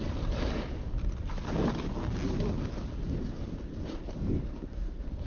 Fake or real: real